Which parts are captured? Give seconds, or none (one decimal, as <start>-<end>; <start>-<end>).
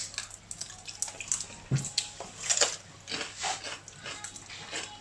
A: 0.0-5.0